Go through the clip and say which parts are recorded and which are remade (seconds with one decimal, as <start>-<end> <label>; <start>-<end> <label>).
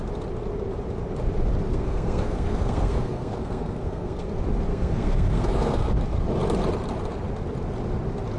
0.0-1.7 recorded; 1.7-4.3 remade; 4.3-4.7 recorded; 4.7-5.9 remade; 5.9-8.4 recorded